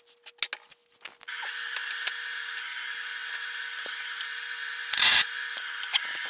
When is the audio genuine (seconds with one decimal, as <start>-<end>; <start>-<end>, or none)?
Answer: 0.0-6.3